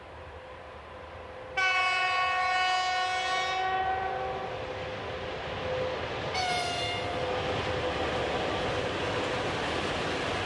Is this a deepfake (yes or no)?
no